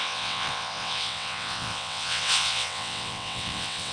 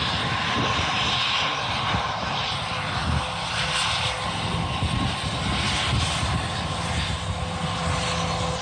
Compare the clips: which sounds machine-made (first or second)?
first